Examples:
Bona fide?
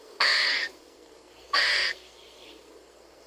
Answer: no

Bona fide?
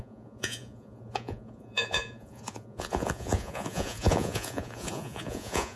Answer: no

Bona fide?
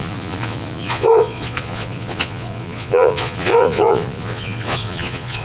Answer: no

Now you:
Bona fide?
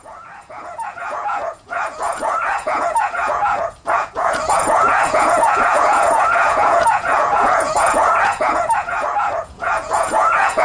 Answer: no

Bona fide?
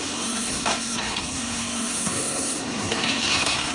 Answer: no